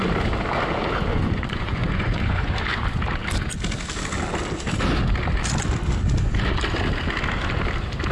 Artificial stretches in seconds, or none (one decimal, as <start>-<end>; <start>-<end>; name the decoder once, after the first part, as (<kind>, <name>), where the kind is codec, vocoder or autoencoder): 1.1-2.5 (vocoder, Vocos)